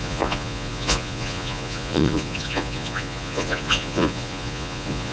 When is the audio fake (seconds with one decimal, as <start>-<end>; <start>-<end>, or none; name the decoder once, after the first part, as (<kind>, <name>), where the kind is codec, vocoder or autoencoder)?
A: 0.0-5.1 (vocoder, Vocos)